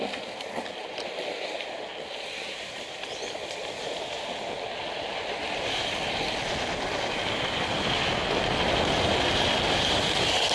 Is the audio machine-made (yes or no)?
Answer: no